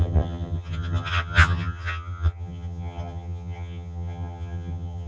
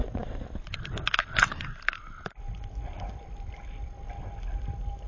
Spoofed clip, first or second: first